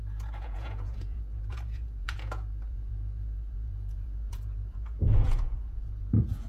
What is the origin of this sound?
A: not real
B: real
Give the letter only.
A